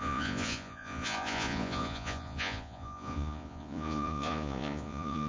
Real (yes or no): no